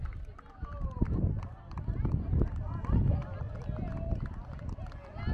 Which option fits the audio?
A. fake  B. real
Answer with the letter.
B